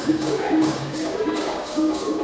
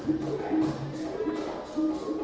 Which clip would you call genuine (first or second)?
second